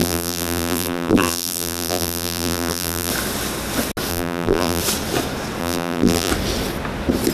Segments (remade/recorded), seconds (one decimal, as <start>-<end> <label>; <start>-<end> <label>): 0.0-3.1 remade; 3.1-4.1 recorded; 4.1-4.8 remade; 4.8-5.6 recorded; 5.6-6.3 remade; 6.3-7.3 recorded

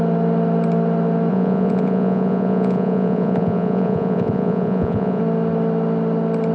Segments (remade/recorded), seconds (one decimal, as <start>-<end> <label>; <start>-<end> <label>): 0.0-1.3 recorded; 1.3-5.2 remade; 5.2-6.5 recorded

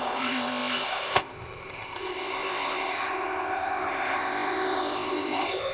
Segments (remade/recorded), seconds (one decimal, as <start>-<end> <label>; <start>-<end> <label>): 0.0-5.7 remade